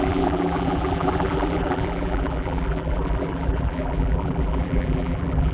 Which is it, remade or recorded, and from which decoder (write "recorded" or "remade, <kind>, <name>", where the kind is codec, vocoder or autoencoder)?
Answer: remade, vocoder, BigVGAN v2